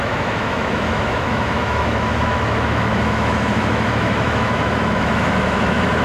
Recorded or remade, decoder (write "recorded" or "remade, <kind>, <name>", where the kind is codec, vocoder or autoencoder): remade, autoencoder, DAC-VAE